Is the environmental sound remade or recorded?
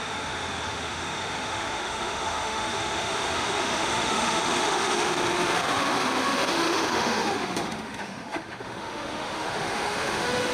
remade